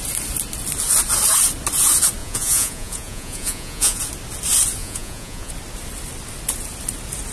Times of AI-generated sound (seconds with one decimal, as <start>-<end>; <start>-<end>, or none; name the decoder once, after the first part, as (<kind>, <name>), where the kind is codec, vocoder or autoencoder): 2.2-4.0 (vocoder, Vocos); 4.8-5.5